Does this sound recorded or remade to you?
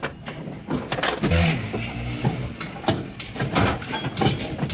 recorded